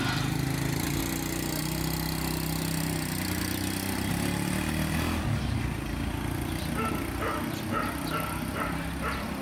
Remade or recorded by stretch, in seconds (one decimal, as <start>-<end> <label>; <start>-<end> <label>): 0.0-9.4 recorded